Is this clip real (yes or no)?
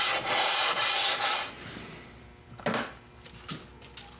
yes